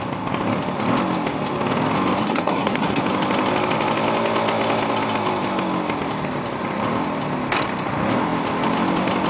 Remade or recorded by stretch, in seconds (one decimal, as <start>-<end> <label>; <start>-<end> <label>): 0.0-2.2 recorded; 2.2-3.0 remade; 3.0-9.3 recorded